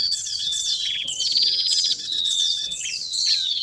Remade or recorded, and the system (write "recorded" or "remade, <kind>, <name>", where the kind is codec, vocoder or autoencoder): remade, vocoder, WaveNeXt